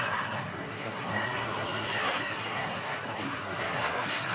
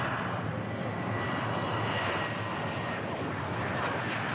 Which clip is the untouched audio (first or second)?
second